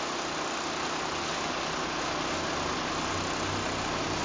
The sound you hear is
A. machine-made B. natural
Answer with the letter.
B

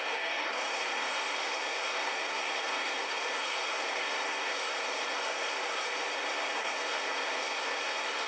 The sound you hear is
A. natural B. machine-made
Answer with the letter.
B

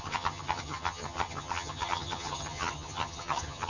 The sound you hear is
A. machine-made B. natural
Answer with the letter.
A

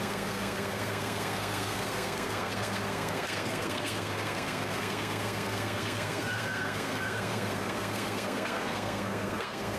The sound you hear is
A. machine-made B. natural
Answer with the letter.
A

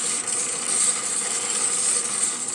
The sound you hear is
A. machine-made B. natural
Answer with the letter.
B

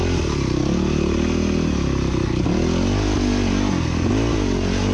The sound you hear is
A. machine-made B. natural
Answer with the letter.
B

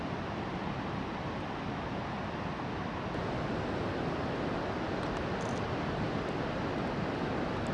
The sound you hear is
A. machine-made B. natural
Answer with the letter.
B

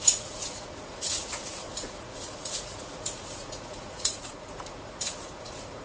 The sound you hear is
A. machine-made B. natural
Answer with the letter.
A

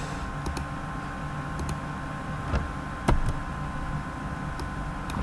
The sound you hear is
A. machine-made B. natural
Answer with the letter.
B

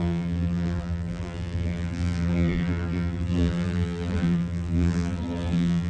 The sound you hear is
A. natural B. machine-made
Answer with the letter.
B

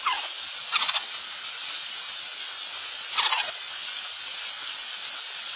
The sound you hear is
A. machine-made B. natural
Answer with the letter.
B